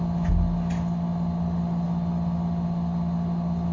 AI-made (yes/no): no